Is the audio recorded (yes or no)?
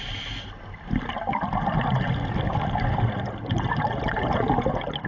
yes